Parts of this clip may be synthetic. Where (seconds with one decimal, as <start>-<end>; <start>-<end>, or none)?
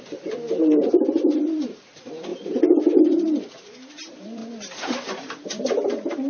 0.0-2.3; 3.0-4.4; 5.1-6.3